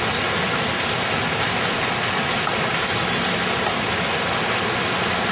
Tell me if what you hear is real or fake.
real